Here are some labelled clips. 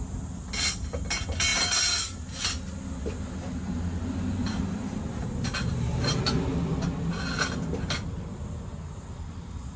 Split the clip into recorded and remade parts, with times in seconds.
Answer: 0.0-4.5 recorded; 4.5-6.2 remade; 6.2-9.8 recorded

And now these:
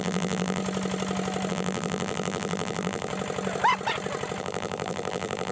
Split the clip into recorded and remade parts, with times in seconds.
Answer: 0.0-0.6 remade; 0.6-1.5 recorded; 1.5-3.1 remade; 3.1-4.4 recorded; 4.4-5.5 remade

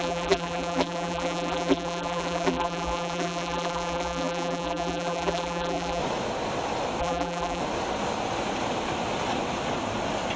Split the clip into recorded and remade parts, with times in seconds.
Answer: 0.0-6.0 remade; 6.0-7.0 recorded; 7.0-7.6 remade; 7.6-10.4 recorded

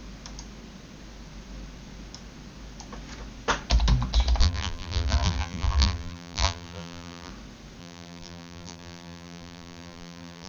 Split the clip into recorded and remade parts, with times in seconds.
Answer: 0.0-4.4 recorded; 4.4-7.3 remade; 7.3-7.8 recorded; 7.8-10.5 remade

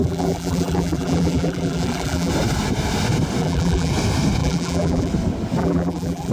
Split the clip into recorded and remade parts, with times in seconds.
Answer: 0.0-2.3 remade; 2.3-3.4 recorded; 3.4-3.9 remade; 3.9-4.4 recorded; 4.4-5.1 remade; 5.1-5.6 recorded; 5.6-6.3 remade

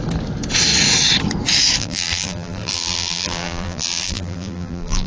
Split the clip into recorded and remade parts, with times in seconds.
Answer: 0.0-1.8 recorded; 1.8-5.1 remade